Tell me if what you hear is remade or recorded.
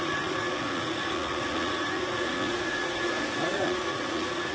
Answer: remade